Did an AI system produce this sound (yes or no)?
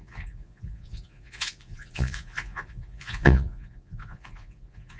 yes